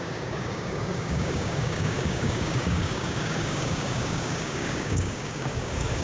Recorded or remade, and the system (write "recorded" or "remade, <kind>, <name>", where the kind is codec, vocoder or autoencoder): remade, codec, DAC